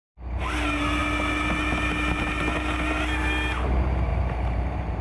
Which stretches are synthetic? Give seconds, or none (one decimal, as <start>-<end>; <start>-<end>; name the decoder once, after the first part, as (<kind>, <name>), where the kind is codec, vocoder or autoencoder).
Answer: 4.1-5.0 (vocoder, BigVGAN v2)